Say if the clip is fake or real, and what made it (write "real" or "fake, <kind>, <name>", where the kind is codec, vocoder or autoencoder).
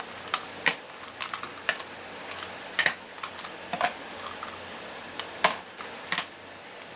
real